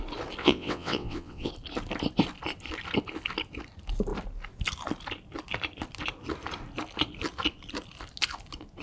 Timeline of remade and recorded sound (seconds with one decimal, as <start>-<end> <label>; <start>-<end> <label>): 0.0-0.4 recorded; 0.4-1.5 remade; 1.5-8.8 recorded